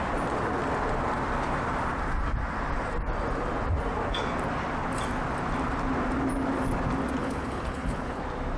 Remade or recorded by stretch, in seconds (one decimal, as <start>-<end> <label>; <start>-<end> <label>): 0.0-7.2 recorded; 7.2-8.2 remade; 8.2-8.6 recorded